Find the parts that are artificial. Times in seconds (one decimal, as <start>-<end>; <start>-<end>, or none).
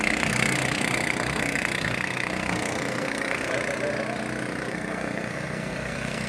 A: 0.0-3.5; 4.7-6.3